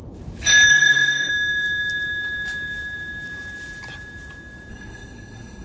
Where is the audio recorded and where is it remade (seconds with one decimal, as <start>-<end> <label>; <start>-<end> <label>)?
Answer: 0.0-0.7 recorded; 0.7-1.3 remade; 1.3-4.7 recorded; 4.7-5.6 remade